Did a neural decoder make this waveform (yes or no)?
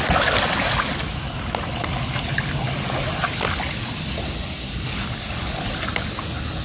no